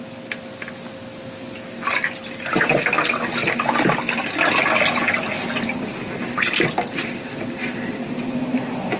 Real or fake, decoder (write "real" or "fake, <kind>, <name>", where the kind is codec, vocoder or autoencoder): real